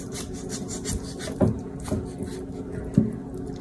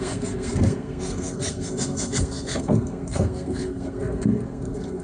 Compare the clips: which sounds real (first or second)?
first